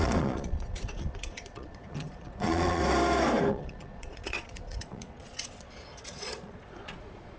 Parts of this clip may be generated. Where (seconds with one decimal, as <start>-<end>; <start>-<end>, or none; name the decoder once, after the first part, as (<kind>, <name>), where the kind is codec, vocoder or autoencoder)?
0.0-2.8 (vocoder, Vocos); 3.5-7.4

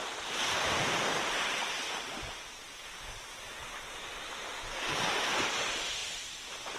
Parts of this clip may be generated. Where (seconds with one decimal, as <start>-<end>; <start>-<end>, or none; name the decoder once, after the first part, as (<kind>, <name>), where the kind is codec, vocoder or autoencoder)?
none

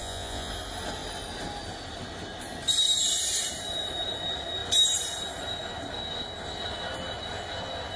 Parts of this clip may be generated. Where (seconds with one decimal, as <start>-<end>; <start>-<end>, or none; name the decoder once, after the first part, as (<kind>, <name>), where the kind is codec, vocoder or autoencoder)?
0.0-0.5 (vocoder, Vocos)

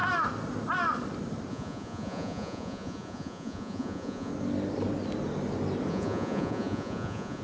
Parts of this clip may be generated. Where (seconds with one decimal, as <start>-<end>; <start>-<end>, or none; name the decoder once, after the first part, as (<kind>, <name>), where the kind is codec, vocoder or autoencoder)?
1.5-4.3 (vocoder, Vocos); 5.9-7.4

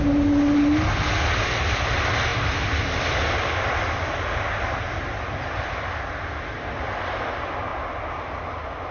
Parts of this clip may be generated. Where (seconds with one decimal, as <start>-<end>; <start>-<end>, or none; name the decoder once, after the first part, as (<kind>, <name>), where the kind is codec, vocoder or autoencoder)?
none

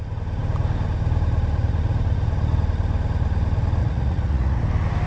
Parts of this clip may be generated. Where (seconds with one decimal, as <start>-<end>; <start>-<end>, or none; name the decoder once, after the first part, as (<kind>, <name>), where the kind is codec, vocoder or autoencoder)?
3.8-4.6 (vocoder, Vocos)